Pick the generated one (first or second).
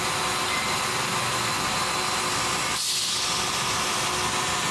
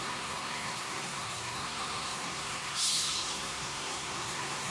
second